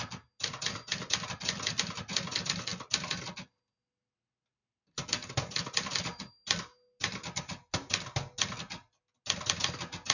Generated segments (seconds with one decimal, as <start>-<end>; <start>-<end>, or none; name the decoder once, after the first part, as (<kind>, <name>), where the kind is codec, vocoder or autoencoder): none